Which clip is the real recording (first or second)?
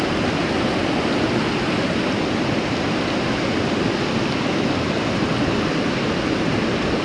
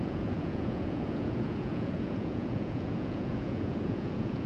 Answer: first